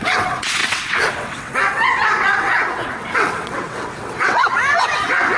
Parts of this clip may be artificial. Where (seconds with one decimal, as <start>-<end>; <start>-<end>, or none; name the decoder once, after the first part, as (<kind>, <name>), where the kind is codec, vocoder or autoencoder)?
0.0-5.4 (vocoder, WaveNeXt)